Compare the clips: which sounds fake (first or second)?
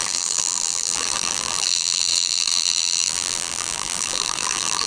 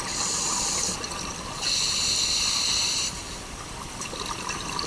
first